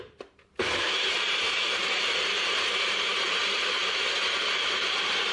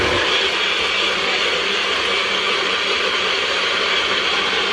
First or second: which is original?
second